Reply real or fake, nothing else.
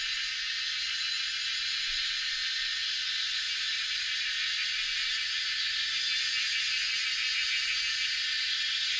real